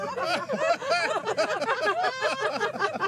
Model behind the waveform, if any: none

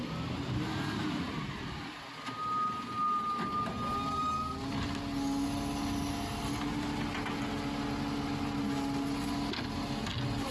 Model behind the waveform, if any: none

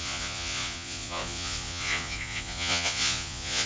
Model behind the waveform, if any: vocoder, Vocos